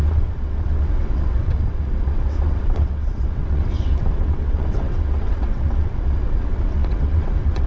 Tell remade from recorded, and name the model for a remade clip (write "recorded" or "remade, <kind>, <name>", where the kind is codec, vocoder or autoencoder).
remade, vocoder, WaveNeXt